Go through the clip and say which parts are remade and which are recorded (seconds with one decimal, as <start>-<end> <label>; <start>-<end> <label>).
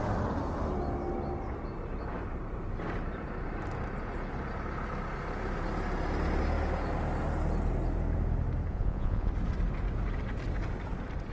0.0-8.7 recorded; 8.7-9.3 remade; 9.3-11.3 recorded